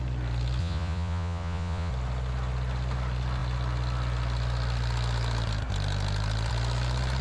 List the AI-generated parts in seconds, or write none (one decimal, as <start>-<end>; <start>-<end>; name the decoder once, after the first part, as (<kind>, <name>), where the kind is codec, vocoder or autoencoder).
0.6-1.9 (vocoder, Vocos)